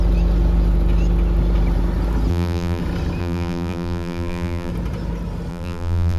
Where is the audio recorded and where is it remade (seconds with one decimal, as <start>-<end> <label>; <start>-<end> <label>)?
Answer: 0.0-2.3 recorded; 2.3-2.8 remade; 2.8-3.2 recorded; 3.2-4.7 remade; 4.7-5.5 recorded; 5.5-6.2 remade